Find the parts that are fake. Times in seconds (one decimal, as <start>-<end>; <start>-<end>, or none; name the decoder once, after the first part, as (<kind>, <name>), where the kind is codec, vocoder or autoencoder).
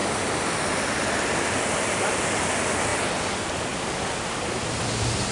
2.9-4.8 (vocoder, BigVGAN v2)